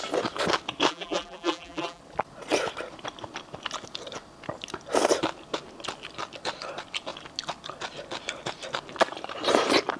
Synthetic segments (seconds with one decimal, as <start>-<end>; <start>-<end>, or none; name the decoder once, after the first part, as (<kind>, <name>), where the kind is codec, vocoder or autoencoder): 0.9-2.0 (vocoder, BigVGAN v2)